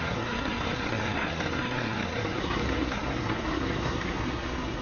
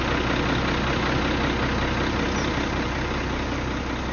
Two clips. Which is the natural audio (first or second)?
second